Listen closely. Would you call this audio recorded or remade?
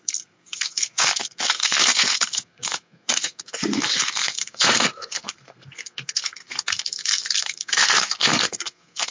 remade